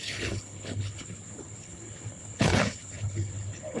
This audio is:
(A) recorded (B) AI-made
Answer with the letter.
B